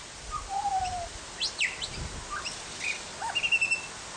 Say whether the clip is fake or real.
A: real